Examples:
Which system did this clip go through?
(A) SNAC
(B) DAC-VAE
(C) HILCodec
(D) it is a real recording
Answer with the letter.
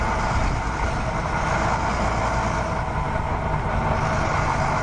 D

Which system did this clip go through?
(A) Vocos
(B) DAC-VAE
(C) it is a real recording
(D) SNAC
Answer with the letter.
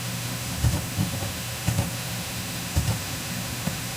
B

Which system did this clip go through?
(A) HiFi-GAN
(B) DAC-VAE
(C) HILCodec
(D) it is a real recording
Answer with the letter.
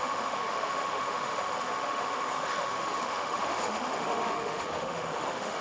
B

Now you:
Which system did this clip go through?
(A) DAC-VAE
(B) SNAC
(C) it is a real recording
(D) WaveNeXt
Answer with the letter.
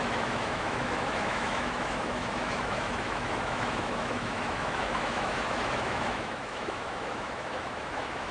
A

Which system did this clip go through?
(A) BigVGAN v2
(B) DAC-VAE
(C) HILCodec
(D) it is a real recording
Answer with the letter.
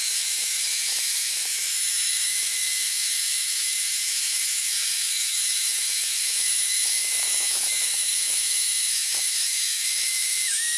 B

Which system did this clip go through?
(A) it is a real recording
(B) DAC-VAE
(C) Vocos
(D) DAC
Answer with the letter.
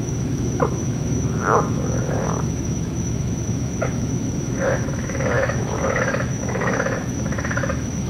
B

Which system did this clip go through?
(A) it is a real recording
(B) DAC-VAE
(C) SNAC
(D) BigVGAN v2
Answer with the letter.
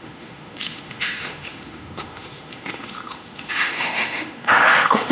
B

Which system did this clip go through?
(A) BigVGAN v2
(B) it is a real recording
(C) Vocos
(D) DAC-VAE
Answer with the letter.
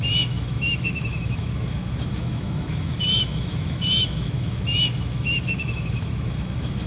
D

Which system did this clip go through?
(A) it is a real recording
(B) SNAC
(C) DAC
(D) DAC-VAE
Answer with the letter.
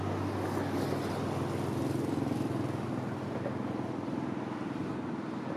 A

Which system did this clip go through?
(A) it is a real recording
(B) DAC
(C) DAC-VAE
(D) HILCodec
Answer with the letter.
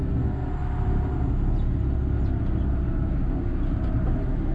A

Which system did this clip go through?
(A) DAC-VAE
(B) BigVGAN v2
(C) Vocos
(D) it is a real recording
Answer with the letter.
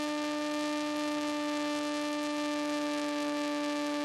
D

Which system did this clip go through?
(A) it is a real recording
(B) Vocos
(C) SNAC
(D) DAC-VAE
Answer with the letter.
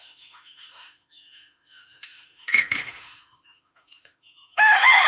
D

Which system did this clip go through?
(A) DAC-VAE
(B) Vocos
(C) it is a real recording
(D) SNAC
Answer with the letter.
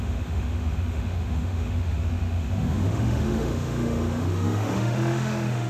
A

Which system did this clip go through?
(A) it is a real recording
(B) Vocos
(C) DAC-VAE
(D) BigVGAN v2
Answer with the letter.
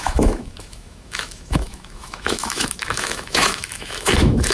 C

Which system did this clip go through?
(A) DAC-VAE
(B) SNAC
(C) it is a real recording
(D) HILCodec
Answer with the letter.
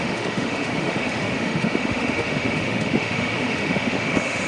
A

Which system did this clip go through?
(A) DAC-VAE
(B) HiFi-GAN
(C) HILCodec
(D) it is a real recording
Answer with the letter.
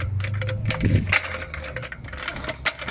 D